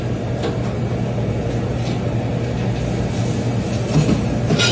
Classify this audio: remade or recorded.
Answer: recorded